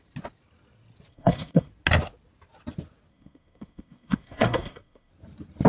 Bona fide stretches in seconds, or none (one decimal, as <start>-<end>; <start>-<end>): 0.0-1.1; 1.7-3.1; 5.1-5.7